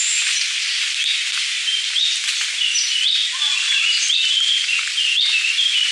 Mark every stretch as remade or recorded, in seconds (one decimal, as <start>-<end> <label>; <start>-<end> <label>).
0.0-5.9 recorded

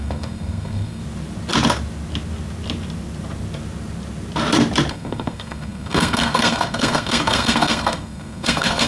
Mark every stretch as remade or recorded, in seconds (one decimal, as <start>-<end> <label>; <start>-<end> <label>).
0.0-1.0 remade; 1.0-4.9 recorded; 4.9-8.9 remade

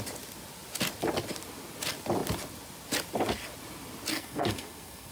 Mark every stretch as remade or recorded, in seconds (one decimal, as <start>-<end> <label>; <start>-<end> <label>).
0.0-4.1 recorded; 4.1-5.1 remade

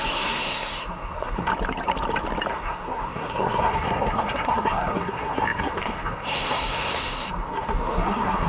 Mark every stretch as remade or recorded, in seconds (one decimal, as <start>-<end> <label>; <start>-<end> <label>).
0.0-1.5 remade; 1.5-2.5 recorded; 2.5-8.5 remade

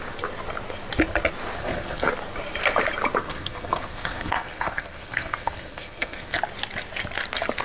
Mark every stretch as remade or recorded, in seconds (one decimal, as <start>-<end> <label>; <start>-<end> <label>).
0.0-1.6 recorded; 1.6-2.1 remade; 2.1-3.2 recorded; 3.2-6.4 remade; 6.4-7.6 recorded

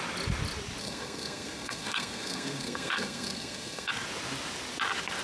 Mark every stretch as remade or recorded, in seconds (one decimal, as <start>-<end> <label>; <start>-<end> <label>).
0.0-0.8 recorded; 0.8-3.9 remade; 3.9-5.2 recorded

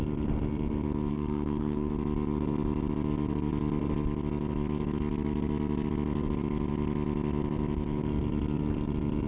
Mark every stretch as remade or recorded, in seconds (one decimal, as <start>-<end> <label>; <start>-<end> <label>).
0.0-1.1 recorded; 1.1-1.9 remade; 1.9-9.3 recorded

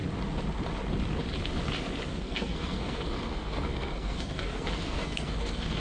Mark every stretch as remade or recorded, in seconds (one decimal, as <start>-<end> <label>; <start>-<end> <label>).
0.0-2.1 recorded; 2.1-5.8 remade